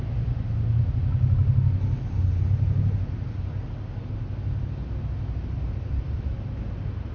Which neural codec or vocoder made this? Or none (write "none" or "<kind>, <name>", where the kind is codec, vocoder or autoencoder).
none